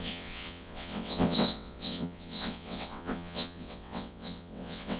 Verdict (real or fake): fake